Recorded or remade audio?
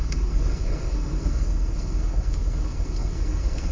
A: remade